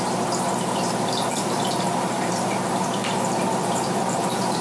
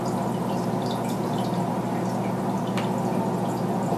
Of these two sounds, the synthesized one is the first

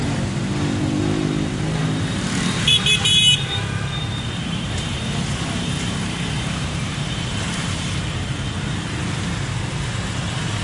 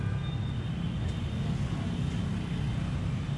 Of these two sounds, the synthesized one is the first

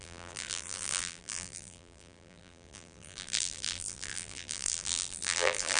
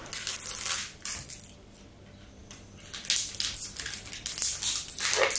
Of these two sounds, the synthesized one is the first